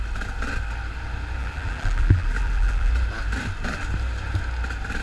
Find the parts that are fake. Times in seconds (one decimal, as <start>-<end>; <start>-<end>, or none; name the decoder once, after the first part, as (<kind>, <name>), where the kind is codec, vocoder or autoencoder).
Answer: 1.4-2.9 (vocoder, BigVGAN v2)